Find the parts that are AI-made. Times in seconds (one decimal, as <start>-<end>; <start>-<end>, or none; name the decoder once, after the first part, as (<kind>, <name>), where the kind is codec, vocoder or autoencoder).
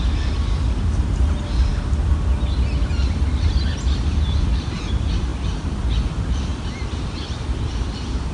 none